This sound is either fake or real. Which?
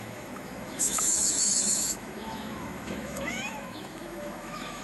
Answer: fake